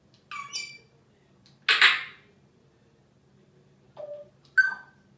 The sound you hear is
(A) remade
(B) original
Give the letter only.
B